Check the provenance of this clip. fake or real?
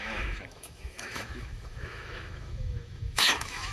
fake